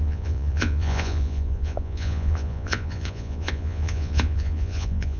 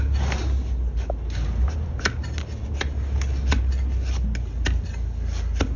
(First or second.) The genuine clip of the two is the second